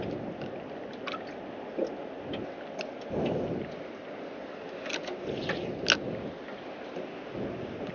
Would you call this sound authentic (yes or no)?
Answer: yes